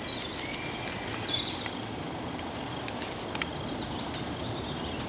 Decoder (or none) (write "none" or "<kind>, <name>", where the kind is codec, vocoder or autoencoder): none